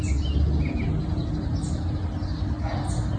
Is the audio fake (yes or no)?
no